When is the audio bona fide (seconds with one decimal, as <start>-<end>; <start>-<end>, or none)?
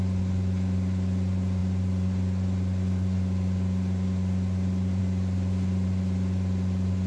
0.0-7.1